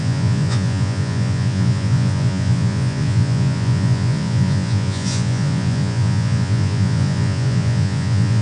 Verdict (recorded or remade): remade